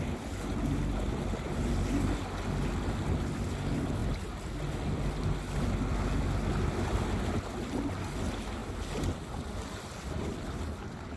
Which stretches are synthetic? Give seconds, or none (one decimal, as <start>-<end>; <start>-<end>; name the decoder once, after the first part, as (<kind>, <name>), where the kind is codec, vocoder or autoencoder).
none